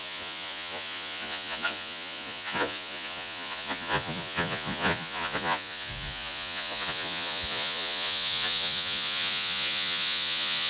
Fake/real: fake